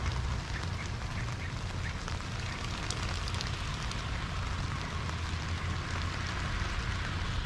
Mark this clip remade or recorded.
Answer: recorded